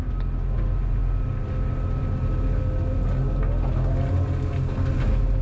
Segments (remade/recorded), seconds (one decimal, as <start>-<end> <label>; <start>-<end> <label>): 0.0-5.4 recorded